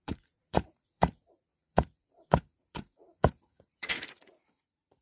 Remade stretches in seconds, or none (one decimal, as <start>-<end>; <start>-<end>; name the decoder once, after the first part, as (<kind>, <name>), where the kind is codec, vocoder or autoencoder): 0.0-5.0 (vocoder, Vocos)